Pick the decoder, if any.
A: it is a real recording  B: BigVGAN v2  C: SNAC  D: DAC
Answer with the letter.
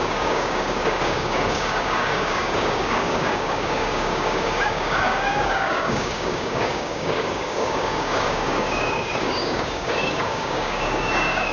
D